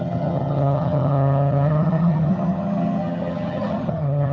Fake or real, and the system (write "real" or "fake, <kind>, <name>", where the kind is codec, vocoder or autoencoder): fake, vocoder, HiFi-GAN